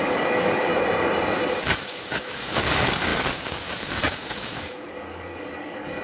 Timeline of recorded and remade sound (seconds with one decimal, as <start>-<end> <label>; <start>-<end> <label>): 0.0-0.7 remade; 0.7-1.6 recorded; 1.6-6.0 remade